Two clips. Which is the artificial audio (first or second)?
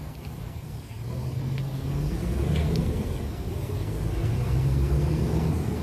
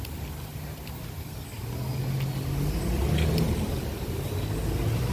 first